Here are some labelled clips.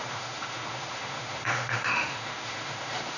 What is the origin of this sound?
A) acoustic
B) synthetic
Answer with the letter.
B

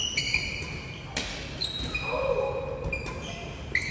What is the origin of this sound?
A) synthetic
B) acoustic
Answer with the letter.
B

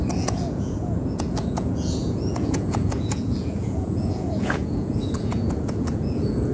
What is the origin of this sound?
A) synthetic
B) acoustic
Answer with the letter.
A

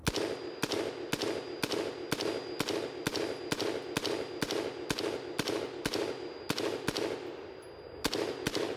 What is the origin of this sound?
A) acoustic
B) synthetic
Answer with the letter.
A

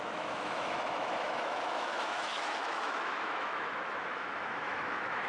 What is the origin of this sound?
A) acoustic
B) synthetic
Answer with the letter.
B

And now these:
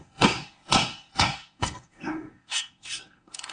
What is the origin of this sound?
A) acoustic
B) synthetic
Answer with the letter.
B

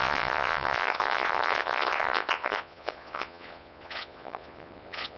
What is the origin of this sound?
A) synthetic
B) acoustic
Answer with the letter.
A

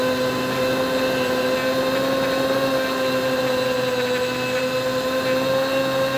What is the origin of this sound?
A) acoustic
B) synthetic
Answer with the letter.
A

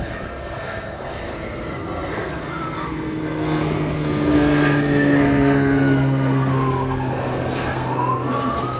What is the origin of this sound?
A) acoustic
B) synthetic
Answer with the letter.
B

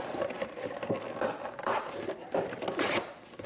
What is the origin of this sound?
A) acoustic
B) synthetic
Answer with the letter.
A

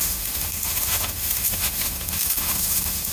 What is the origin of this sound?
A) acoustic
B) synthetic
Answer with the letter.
B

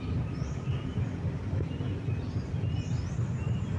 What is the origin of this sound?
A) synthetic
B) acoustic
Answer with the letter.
B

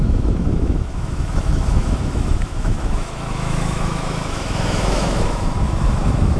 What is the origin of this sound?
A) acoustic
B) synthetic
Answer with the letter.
B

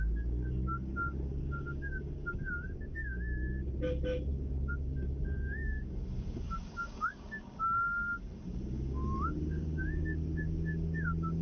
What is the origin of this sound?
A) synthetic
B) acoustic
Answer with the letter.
A